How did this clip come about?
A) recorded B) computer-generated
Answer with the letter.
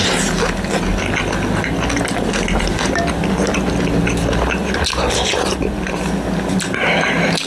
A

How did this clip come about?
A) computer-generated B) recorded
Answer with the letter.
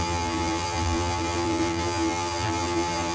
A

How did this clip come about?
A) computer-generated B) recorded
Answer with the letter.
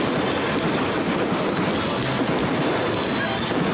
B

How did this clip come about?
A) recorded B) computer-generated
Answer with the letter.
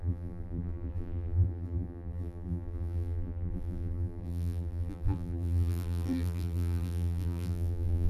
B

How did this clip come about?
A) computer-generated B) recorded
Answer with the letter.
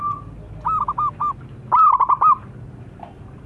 B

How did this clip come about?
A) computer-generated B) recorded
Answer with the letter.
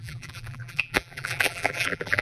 A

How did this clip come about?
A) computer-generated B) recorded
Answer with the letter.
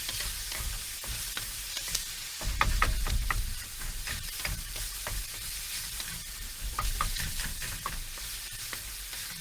A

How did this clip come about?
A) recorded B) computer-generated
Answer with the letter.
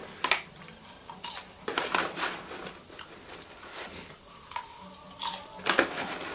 A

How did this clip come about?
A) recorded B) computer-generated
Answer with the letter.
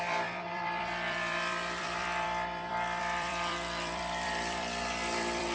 B